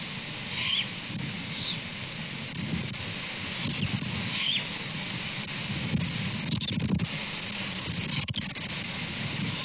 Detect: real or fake real